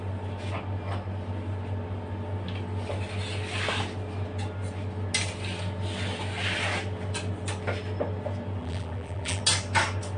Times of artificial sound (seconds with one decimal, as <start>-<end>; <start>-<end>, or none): 8.6-9.4